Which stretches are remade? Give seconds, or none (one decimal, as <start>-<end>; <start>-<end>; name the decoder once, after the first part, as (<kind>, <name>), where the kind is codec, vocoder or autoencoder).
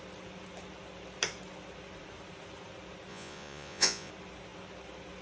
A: 3.1-4.1 (vocoder, Vocos)